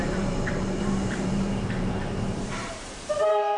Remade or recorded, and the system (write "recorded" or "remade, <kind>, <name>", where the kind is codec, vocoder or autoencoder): remade, vocoder, BigVGAN v2